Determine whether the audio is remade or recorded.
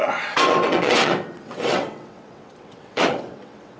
remade